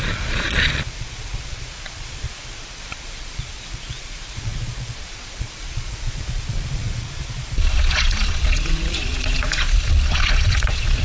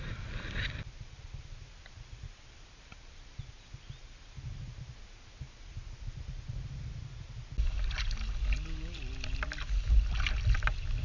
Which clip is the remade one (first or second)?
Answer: first